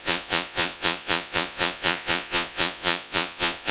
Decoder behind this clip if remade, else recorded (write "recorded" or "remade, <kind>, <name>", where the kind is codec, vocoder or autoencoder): remade, vocoder, Vocos